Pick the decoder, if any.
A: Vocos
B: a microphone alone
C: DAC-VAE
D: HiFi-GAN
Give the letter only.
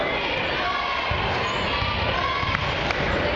B